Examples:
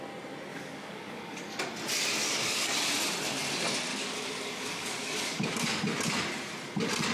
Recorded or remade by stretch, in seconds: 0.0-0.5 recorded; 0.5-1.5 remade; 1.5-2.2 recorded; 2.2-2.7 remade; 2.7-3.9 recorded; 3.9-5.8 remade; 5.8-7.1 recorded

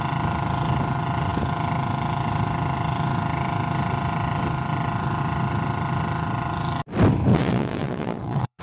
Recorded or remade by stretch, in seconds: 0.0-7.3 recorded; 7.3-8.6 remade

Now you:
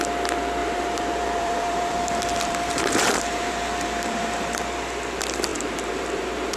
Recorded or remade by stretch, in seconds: 0.0-0.6 recorded; 0.6-4.6 remade; 4.6-5.5 recorded; 5.5-6.6 remade

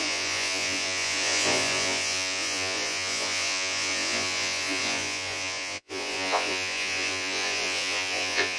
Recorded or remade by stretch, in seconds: 0.0-8.6 remade

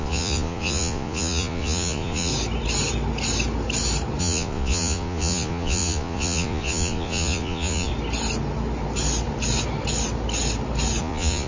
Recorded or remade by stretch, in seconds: 0.0-2.3 remade; 2.3-4.2 recorded; 4.2-7.9 remade; 7.9-11.0 recorded; 11.0-11.5 remade

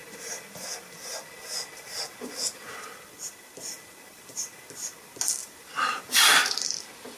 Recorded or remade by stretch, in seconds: 0.0-5.4 recorded; 5.4-6.0 remade; 6.0-7.2 recorded

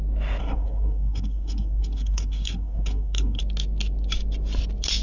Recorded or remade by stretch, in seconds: 0.0-0.4 recorded; 0.4-3.4 remade; 3.4-5.0 recorded

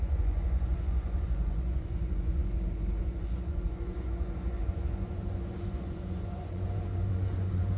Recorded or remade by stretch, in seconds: 0.0-7.8 remade